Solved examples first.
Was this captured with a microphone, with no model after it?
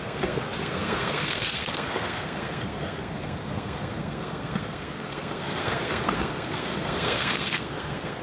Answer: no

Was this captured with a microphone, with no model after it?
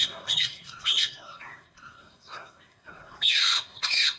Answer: no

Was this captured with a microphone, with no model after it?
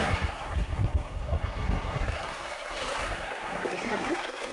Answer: no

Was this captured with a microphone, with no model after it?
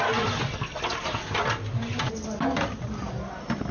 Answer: yes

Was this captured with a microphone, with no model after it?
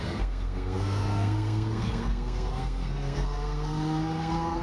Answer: no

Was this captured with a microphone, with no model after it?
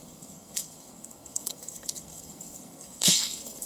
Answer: no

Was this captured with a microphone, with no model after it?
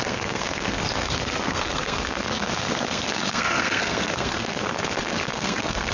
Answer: no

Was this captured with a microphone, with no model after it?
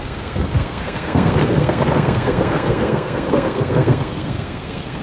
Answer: no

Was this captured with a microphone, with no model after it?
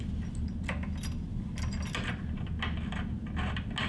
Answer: yes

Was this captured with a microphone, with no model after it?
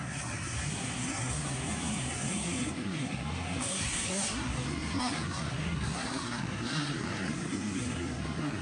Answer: no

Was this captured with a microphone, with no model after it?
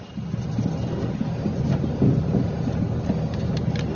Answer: yes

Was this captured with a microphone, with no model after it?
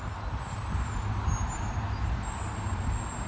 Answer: yes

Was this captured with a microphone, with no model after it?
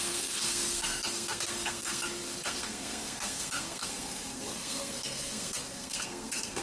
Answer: no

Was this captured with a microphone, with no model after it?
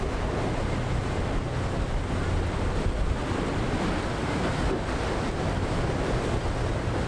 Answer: yes